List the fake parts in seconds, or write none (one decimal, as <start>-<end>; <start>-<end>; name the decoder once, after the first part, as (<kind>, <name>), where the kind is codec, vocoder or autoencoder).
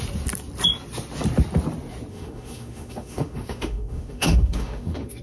2.1-5.2 (autoencoder, DAC-VAE)